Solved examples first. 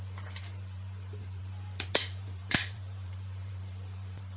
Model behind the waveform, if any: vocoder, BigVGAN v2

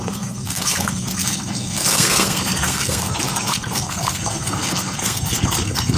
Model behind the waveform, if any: codec, SNAC